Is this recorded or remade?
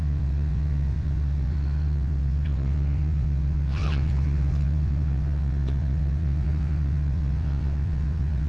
remade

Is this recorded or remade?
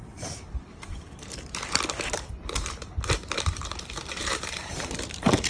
remade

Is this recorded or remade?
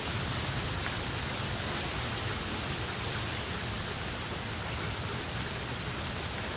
recorded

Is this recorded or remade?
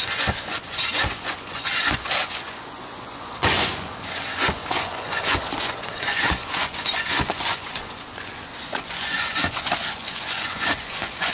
remade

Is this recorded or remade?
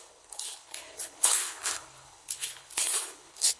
remade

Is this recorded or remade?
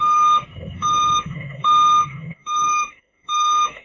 remade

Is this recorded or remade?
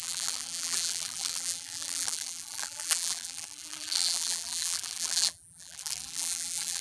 remade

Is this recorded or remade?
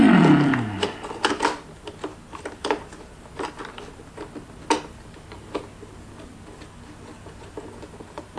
recorded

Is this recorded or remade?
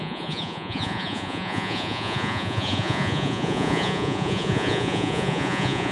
remade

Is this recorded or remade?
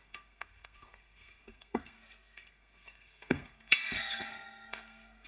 remade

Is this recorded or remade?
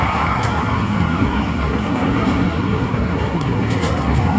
remade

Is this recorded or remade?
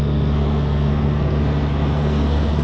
remade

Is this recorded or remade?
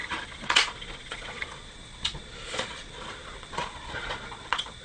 remade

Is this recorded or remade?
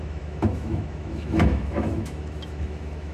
remade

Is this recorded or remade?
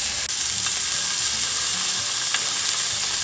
recorded